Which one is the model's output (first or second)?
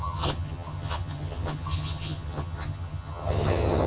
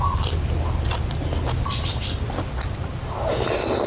first